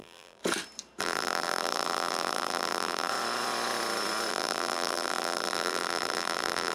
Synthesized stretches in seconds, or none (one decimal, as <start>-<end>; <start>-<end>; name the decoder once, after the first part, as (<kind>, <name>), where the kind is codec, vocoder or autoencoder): 0.0-0.4 (vocoder, BigVGAN v2); 1.0-3.1; 4.3-6.7